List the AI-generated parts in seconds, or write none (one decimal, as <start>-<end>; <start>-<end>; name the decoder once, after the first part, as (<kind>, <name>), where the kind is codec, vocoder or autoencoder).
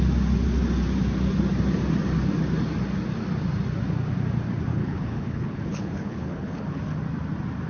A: 4.7-6.8 (codec, HILCodec)